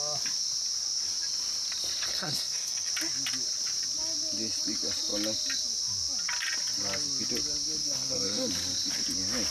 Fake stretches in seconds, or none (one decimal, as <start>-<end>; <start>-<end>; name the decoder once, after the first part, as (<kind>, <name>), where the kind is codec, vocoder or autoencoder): 2.1-2.9 (codec, SNAC); 7.8-8.5